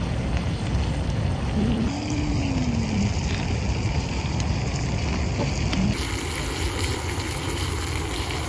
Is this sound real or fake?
real